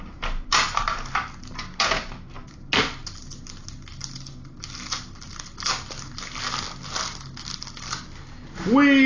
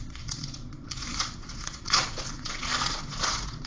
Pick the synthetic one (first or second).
second